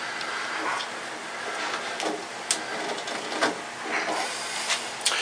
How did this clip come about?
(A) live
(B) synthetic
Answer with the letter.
A